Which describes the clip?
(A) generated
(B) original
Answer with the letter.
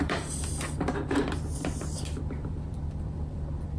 A